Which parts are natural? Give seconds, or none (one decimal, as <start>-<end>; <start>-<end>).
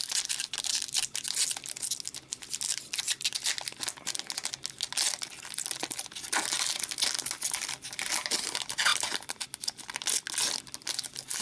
0.0-11.4